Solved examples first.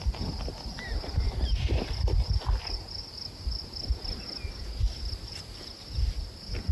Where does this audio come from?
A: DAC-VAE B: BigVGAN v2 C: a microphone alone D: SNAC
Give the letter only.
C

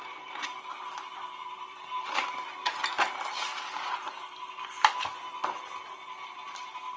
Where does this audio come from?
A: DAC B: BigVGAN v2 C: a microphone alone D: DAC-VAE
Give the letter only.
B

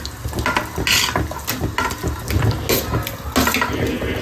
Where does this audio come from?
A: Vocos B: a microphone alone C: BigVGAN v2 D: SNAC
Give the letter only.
B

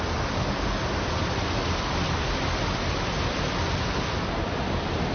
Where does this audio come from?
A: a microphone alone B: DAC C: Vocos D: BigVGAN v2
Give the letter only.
A